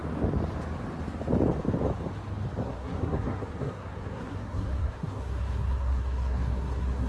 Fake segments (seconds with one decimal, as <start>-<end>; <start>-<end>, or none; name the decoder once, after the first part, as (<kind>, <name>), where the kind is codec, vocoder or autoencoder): 2.6-7.1 (codec, SNAC)